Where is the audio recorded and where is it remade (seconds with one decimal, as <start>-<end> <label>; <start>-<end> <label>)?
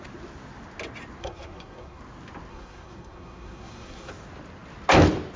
0.0-1.2 recorded; 1.2-2.0 remade; 2.0-2.5 recorded; 2.5-4.1 remade; 4.1-5.4 recorded